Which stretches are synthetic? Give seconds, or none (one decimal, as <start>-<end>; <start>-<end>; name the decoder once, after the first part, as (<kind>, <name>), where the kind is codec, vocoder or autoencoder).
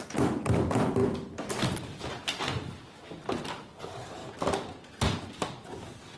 none